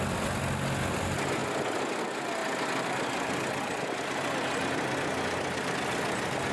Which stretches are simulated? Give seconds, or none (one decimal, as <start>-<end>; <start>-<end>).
none